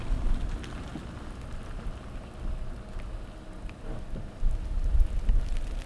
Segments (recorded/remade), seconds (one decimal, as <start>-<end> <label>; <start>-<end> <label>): 0.0-5.9 recorded